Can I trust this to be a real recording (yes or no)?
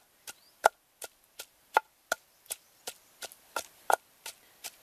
yes